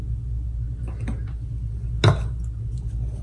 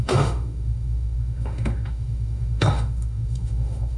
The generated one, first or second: second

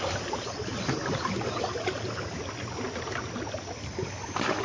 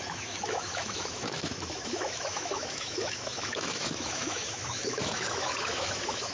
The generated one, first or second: second